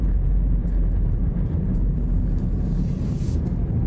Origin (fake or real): fake